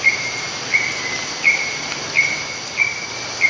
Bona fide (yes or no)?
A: yes